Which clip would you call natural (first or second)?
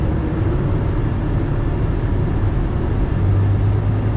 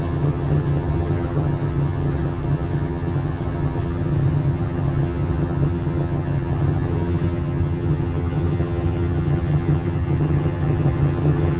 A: first